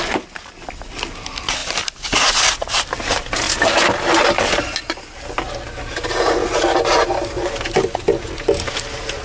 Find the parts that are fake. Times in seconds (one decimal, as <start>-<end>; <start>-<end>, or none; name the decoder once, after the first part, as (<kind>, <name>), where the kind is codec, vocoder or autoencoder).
none